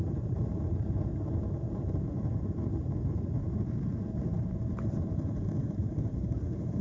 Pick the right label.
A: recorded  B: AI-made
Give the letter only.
B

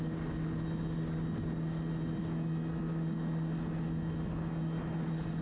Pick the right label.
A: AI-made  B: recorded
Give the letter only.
B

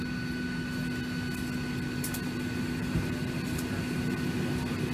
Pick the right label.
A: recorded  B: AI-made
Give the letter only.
A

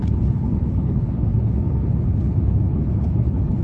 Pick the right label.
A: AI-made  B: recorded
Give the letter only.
A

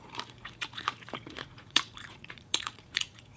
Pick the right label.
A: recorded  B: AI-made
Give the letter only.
B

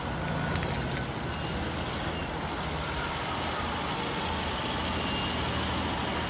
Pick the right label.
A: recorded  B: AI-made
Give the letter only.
A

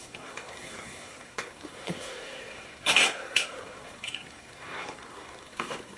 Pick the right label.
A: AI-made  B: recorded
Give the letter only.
A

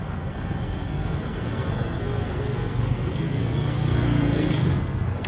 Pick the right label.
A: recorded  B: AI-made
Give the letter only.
B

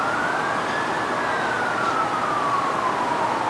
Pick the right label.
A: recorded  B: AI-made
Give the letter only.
A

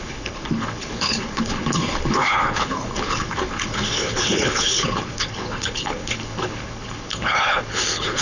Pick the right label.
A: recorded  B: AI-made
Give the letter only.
B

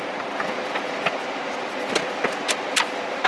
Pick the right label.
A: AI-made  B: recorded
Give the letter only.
B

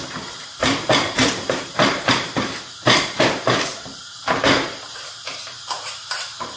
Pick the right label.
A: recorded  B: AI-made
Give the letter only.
B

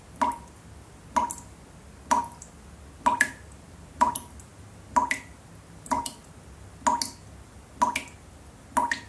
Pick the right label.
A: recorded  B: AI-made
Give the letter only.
A